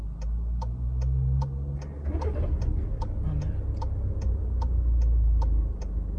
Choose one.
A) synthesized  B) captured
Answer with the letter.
B